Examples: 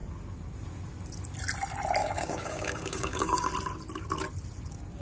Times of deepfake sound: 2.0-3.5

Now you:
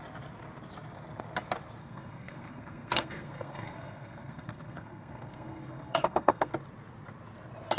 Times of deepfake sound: 1.8-6.5

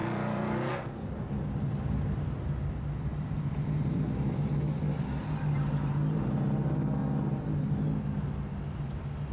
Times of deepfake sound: 0.0-0.7; 3.1-5.5